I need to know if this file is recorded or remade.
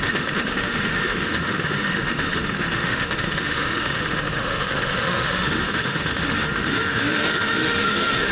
remade